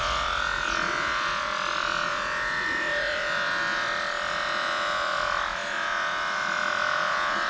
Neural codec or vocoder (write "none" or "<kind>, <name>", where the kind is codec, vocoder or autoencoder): vocoder, Vocos